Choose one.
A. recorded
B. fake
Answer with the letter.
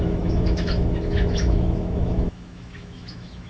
B